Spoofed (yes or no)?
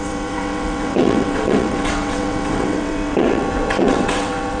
yes